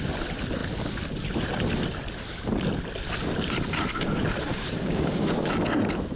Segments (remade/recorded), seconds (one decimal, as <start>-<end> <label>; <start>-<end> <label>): 0.0-4.5 recorded; 4.5-5.6 remade; 5.6-6.2 recorded